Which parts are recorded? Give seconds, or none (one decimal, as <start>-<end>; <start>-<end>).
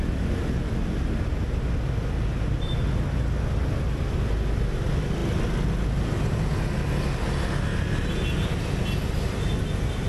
0.0-10.1